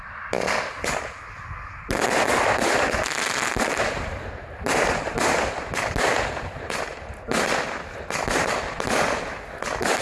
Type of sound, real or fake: real